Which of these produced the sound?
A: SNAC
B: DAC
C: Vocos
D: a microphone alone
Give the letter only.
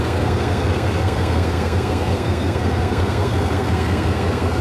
A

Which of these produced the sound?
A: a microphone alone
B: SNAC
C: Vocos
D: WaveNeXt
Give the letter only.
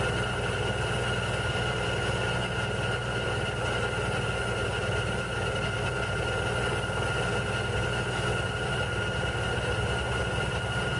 A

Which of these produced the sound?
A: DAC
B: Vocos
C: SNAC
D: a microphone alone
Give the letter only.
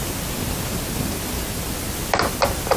D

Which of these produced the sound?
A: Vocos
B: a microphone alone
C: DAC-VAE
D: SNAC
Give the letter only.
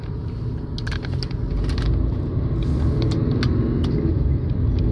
B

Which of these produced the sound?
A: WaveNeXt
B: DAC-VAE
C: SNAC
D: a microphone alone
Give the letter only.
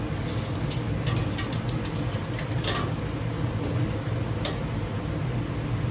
D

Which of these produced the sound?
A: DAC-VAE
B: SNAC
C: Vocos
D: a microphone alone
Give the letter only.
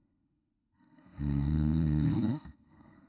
B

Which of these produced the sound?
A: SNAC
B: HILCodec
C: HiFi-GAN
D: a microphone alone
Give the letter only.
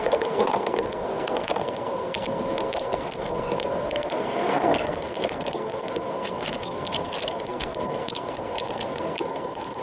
A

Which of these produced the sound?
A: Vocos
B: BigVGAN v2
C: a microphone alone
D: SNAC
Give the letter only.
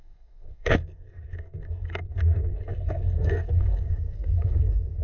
D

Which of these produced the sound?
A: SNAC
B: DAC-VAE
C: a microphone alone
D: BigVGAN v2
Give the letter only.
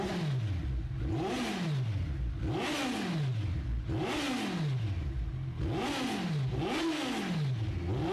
C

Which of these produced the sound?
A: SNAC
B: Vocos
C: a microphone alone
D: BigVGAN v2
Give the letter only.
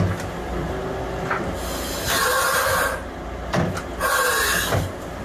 C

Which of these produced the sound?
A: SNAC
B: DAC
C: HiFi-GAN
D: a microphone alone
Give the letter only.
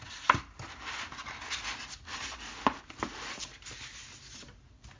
D